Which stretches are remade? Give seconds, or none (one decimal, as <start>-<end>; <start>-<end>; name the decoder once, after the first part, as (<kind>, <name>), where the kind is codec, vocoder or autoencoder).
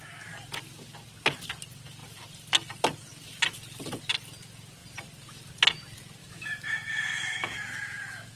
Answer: 6.2-8.4 (autoencoder, DAC-VAE)